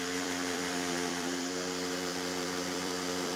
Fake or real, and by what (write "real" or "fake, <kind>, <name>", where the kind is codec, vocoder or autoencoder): fake, vocoder, BigVGAN v2